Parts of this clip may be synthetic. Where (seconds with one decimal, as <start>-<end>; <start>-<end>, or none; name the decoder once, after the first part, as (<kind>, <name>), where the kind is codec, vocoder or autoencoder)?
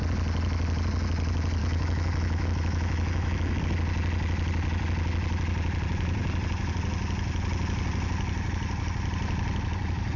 1.6-3.6 (autoencoder, DAC-VAE)